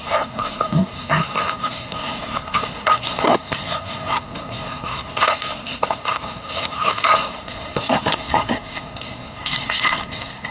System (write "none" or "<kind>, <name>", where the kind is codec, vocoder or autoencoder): codec, SNAC